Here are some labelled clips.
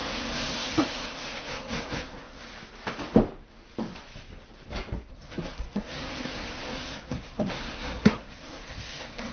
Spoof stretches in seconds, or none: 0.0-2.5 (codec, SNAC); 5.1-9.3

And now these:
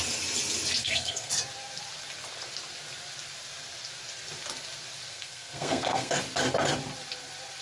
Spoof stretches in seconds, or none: 0.8-1.3 (codec, SNAC); 5.1-6.2

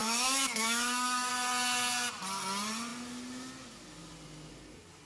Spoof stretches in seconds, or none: 0.0-1.3 (autoencoder, DAC-VAE)